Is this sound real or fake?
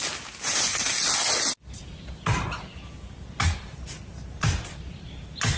real